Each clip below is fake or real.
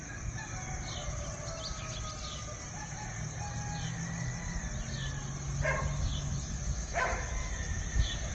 real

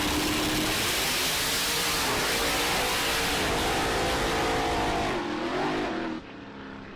real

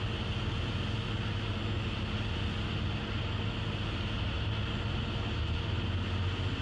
real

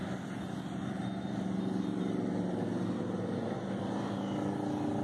real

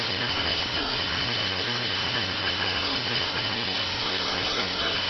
fake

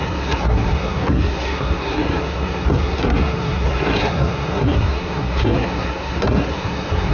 fake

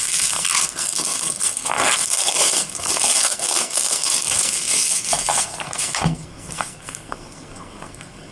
fake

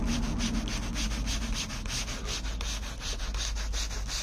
real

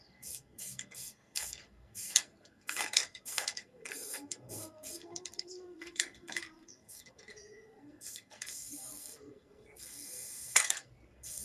fake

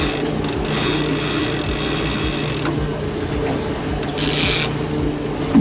real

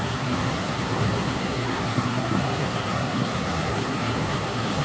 fake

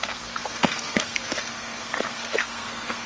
fake